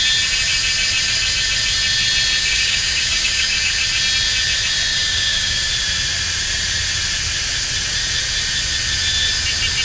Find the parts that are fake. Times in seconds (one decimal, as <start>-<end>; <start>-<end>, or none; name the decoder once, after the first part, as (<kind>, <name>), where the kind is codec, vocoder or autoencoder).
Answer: 2.4-3.8 (codec, DAC); 4.9-5.7